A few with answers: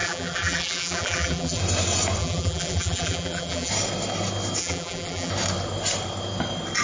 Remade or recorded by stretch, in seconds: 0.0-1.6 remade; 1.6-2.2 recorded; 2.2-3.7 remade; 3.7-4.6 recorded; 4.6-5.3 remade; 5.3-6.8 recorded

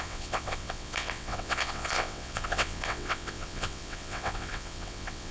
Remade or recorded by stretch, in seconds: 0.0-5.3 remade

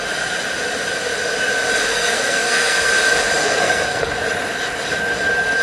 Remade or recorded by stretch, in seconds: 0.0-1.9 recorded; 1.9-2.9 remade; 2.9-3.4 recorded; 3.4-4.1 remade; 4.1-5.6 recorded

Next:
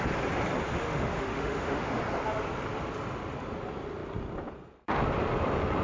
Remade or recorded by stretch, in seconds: 0.0-0.8 recorded; 0.8-2.0 remade; 2.0-5.8 recorded